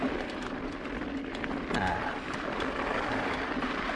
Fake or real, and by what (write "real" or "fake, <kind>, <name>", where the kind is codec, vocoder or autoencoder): fake, vocoder, BigVGAN v2